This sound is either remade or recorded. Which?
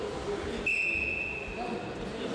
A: recorded